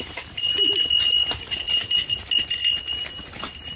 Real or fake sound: real